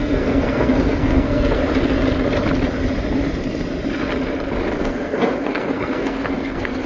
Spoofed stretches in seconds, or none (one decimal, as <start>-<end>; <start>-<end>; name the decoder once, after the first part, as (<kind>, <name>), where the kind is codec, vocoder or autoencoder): 0.0-1.6 (codec, SNAC); 4.8-6.9